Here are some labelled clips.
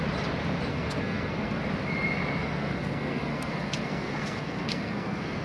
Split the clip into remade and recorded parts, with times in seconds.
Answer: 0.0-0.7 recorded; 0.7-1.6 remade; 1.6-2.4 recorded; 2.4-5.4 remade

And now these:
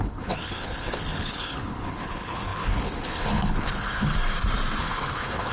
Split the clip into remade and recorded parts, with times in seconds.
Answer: 0.0-4.1 remade; 4.1-4.8 recorded; 4.8-5.5 remade